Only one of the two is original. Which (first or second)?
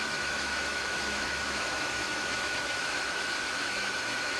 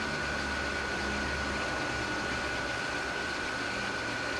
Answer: second